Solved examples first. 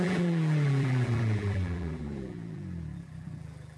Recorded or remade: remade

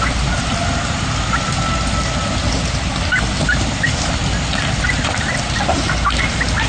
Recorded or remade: recorded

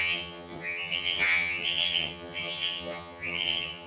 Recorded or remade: remade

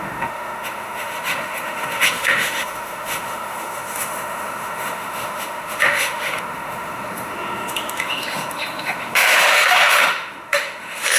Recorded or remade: remade